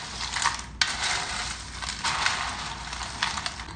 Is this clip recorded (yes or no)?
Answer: yes